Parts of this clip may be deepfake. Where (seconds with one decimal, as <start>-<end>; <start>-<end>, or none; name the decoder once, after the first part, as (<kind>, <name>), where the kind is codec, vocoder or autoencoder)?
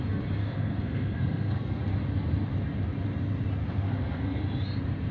0.4-1.8 (codec, SNAC); 3.6-4.4